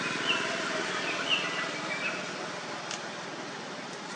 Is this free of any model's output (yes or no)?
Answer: yes